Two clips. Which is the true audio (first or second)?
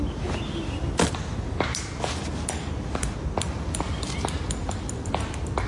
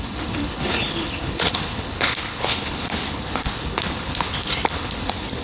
first